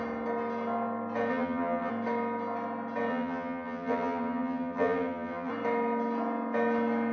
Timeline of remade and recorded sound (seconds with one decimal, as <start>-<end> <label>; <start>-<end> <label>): 0.0-1.3 recorded; 1.3-1.9 remade; 1.9-3.1 recorded; 3.1-5.5 remade; 5.5-7.1 recorded